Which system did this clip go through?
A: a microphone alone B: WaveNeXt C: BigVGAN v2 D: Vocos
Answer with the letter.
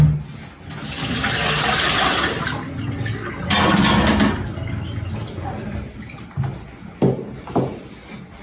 A